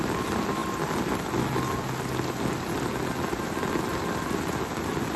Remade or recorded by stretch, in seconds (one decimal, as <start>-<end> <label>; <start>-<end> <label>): 0.0-5.2 recorded